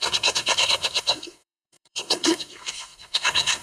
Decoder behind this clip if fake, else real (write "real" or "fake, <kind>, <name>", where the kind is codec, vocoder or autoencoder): fake, codec, SNAC